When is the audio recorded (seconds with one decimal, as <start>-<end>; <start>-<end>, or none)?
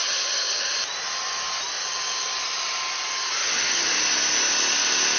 0.7-3.4; 4.0-5.2